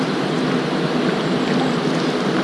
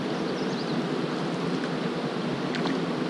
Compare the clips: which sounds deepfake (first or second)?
second